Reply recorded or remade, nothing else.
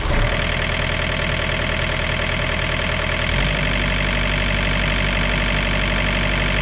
recorded